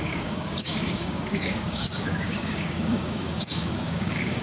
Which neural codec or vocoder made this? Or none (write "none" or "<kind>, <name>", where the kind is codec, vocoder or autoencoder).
codec, DAC